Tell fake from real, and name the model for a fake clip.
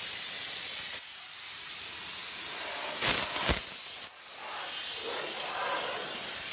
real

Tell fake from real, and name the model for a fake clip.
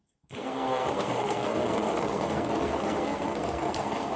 fake, codec, SNAC